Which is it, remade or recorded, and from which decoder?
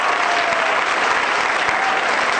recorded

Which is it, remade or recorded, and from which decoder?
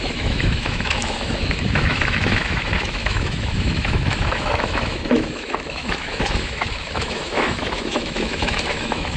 remade, autoencoder, DAC-VAE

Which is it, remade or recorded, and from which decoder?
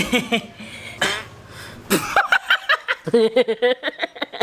recorded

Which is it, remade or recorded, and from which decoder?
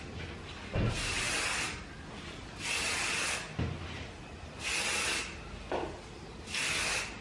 recorded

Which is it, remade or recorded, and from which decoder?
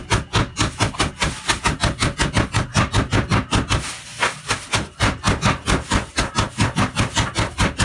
recorded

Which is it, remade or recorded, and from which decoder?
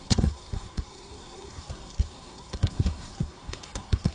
remade, codec, SNAC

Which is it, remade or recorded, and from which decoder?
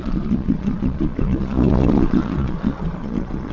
remade, vocoder, Vocos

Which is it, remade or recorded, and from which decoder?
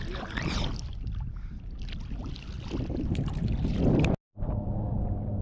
recorded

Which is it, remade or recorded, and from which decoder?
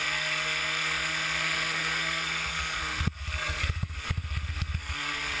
remade, codec, SNAC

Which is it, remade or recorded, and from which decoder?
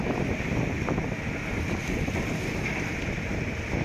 recorded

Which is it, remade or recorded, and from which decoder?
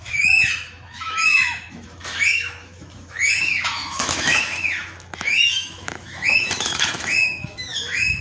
remade, autoencoder, DAC-VAE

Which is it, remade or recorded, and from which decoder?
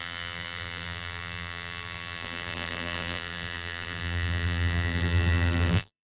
remade, vocoder, BigVGAN v2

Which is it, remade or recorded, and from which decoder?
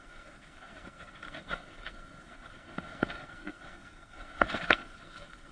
remade, codec, SNAC